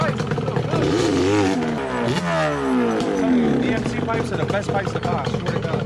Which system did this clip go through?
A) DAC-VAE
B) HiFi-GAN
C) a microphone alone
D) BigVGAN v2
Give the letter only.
C